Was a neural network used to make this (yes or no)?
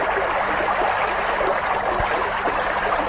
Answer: no